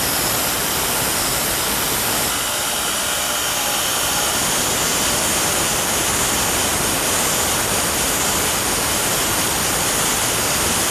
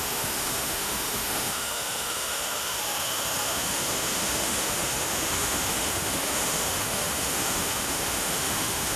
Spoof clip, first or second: second